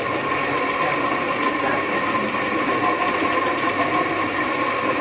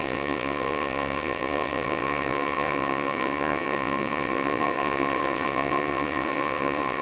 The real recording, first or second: first